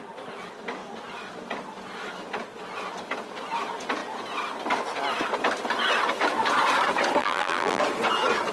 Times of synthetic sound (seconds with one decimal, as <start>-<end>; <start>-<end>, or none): 7.2-7.8